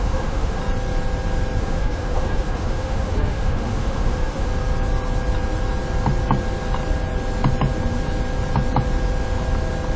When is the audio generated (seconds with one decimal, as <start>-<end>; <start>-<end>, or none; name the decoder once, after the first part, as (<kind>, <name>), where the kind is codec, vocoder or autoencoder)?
0.0-0.6 (autoencoder, DAC-VAE); 1.6-4.5

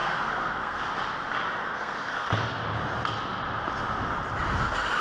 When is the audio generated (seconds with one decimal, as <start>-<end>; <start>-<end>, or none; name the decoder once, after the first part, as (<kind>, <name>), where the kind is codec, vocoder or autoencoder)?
0.0-0.8 (codec, SNAC); 1.6-2.6

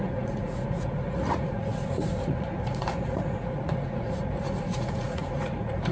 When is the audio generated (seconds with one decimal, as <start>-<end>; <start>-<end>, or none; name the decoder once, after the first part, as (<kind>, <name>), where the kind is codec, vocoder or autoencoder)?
0.0-5.9 (vocoder, Vocos)

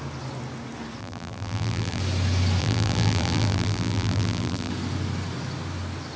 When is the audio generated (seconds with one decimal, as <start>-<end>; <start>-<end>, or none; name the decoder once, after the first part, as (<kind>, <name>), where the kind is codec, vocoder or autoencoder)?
1.0-2.0 (vocoder, BigVGAN v2); 2.6-4.7

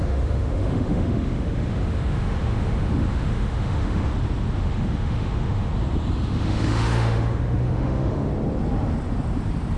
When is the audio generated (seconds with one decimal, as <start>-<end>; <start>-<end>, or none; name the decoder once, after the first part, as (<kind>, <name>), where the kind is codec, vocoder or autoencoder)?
0.0-4.1 (autoencoder, DAC-VAE); 4.6-5.7; 6.2-8.3

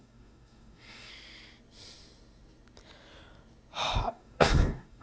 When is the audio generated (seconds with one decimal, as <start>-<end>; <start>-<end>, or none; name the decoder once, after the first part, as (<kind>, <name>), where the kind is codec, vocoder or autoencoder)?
0.0-1.1 (codec, DAC); 4.1-5.0

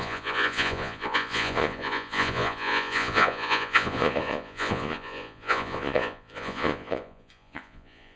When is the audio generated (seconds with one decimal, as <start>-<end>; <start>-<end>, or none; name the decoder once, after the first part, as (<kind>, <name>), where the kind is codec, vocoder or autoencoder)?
0.0-8.2 (vocoder, Vocos)